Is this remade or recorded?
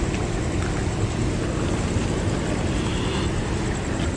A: recorded